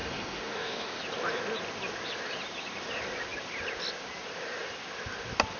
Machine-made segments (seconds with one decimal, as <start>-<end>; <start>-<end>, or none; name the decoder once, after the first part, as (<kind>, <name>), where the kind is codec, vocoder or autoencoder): 0.0-1.0 (autoencoder, DAC-VAE)